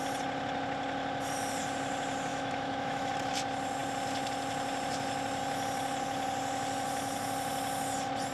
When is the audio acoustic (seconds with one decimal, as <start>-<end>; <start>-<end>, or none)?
0.0-2.3; 3.1-8.3